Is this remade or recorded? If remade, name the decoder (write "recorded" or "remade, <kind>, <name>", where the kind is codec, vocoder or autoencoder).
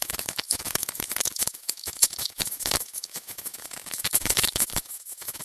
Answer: remade, autoencoder, DAC-VAE